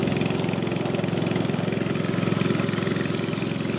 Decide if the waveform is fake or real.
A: real